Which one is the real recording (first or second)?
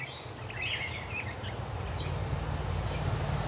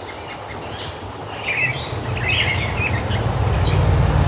second